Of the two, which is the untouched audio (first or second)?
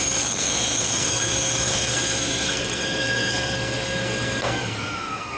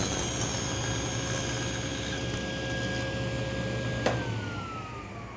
second